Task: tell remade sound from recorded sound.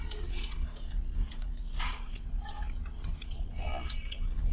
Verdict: remade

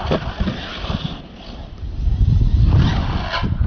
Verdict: recorded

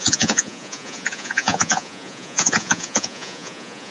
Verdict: remade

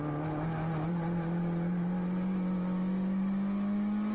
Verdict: recorded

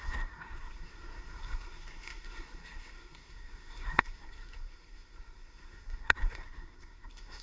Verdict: remade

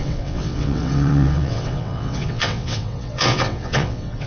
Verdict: remade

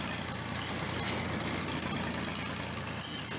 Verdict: recorded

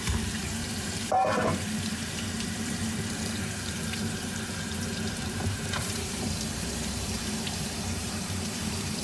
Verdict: remade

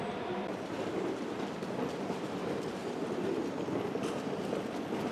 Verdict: recorded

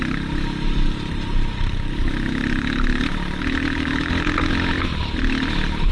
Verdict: recorded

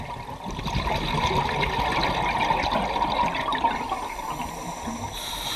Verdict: recorded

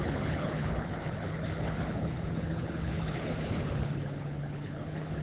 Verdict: remade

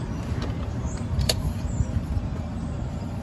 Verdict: remade